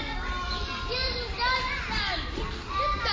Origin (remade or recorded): recorded